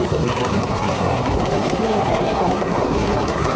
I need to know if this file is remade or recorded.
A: remade